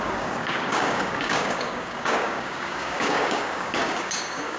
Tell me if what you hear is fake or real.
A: fake